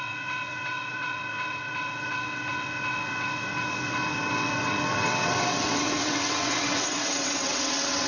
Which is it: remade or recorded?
remade